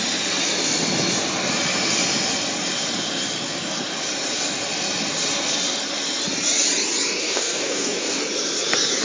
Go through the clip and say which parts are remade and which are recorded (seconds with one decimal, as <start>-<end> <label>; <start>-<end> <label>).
0.0-7.2 recorded; 7.2-8.2 remade; 8.2-9.0 recorded